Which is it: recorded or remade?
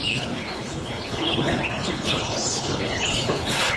remade